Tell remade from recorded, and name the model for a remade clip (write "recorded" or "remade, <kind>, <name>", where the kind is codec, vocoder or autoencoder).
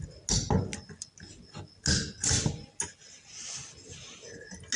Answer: recorded